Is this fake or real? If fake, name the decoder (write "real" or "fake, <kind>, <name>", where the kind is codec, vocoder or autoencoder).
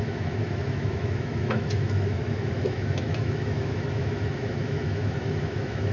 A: fake, autoencoder, DAC-VAE